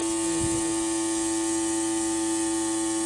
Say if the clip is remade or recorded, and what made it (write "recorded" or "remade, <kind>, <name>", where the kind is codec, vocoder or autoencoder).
recorded